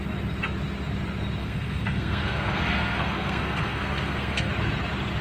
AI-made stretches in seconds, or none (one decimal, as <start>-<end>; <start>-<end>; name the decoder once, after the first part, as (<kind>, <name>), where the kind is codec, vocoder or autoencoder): 1.4-4.5 (codec, SNAC)